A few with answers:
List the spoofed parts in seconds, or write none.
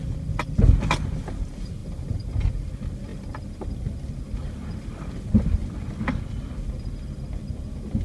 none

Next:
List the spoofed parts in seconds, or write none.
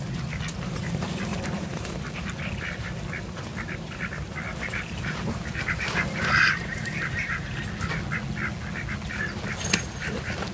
1.3-2.3 (vocoder, BigVGAN v2); 4.5-7.6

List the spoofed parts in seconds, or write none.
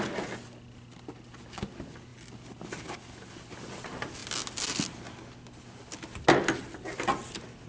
none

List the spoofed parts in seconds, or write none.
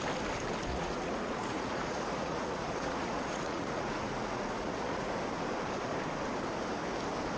0.7-5.1 (vocoder, Vocos)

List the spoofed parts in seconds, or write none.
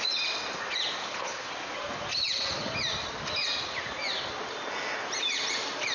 1.0-1.5 (codec, HILCodec)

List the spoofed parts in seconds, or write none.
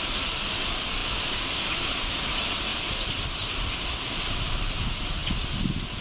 1.0-1.7 (vocoder, BigVGAN v2); 2.7-4.8